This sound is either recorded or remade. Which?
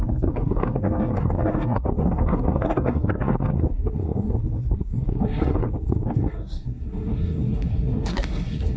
remade